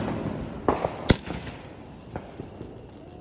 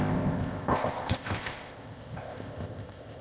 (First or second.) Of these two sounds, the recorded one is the first